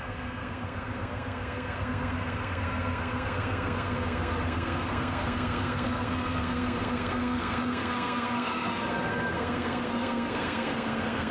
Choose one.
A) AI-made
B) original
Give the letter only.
A